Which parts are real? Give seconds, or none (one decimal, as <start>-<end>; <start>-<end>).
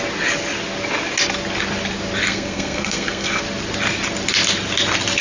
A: 0.0-2.2; 3.4-5.2